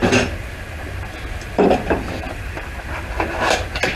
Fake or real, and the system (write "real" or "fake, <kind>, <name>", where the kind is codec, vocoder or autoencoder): real